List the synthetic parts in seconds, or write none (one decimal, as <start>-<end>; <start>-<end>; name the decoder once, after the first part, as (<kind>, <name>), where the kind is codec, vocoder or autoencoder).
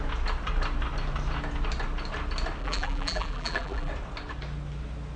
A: 2.6-3.9 (vocoder, BigVGAN v2)